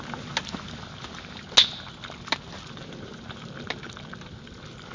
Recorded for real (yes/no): yes